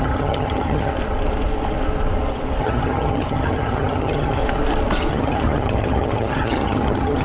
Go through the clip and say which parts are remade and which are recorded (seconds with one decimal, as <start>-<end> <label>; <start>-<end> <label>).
0.0-0.9 remade; 0.9-2.6 recorded; 2.6-4.4 remade; 4.4-5.1 recorded; 5.1-7.2 remade